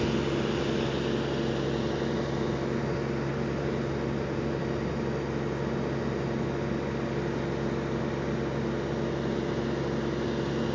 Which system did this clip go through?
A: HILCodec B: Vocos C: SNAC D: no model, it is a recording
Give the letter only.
D